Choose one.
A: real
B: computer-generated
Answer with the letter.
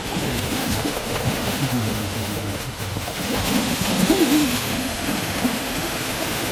B